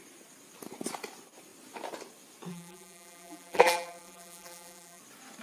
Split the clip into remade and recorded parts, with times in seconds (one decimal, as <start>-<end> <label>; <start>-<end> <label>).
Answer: 0.0-2.5 recorded; 2.5-5.0 remade; 5.0-5.4 recorded